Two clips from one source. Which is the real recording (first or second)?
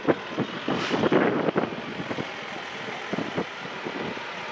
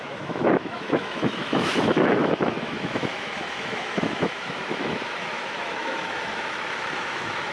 first